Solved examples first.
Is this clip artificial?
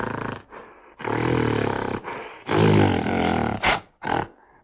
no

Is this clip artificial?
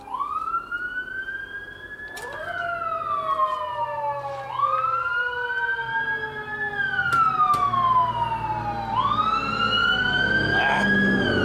no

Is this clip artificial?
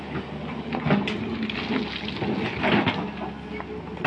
no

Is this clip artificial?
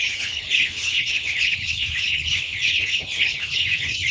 yes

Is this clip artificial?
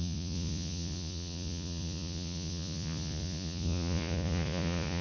yes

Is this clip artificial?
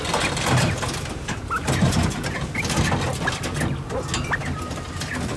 no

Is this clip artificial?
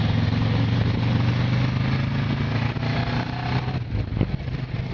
no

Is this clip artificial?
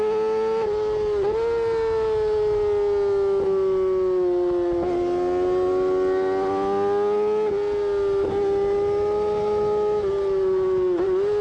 no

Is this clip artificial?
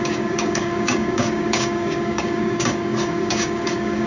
yes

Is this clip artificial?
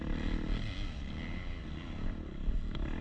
no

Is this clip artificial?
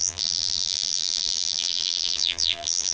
yes